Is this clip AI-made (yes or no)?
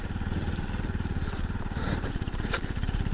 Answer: yes